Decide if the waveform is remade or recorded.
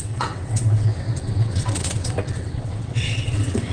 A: remade